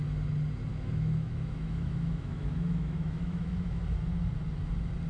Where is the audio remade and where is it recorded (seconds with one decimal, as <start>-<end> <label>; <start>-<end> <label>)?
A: 0.0-0.7 recorded; 0.7-3.8 remade; 3.8-5.1 recorded